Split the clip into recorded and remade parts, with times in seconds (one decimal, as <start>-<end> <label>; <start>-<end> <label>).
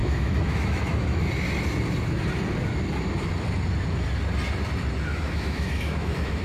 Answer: 0.0-1.3 remade; 1.3-5.1 recorded; 5.1-6.4 remade